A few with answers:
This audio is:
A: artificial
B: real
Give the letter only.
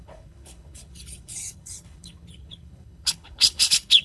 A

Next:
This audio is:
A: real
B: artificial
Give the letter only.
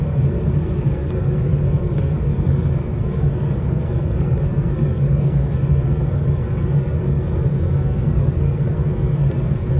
B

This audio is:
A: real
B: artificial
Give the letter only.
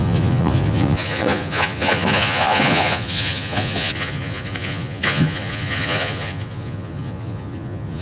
B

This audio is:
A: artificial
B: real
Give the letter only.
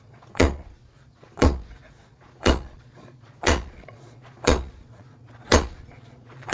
A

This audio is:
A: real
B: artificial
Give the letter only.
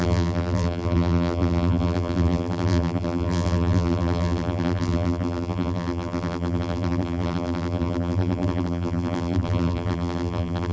B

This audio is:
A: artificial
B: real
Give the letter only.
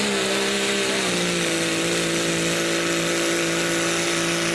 B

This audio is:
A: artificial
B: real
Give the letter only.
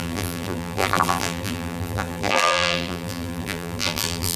A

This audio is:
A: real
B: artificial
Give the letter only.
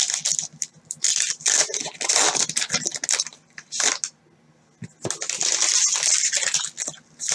A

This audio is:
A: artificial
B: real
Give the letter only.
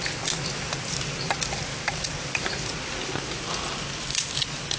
B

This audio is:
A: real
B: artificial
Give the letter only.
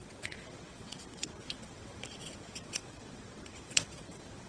B